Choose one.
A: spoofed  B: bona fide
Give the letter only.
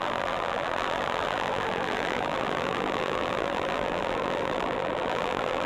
A